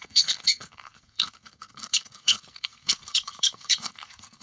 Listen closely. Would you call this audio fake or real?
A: fake